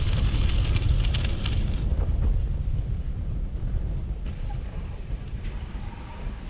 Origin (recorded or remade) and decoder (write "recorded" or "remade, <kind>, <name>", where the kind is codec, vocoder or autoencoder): recorded